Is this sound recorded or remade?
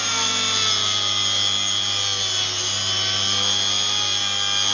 recorded